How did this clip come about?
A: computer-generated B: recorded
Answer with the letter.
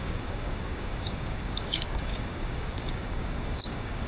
A